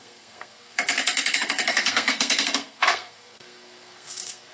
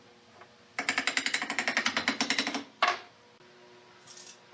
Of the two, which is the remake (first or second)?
first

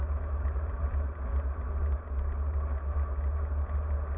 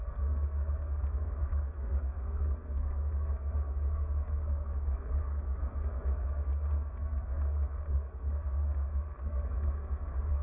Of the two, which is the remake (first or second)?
second